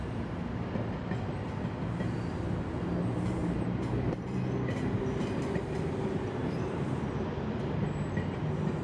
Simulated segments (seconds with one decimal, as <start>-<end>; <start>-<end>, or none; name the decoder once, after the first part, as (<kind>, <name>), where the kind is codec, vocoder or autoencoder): 3.4-4.4 (vocoder, BigVGAN v2); 6.4-6.9